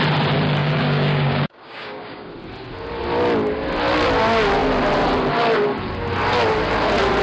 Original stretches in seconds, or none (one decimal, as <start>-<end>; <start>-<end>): 0.0-0.6; 2.3-7.2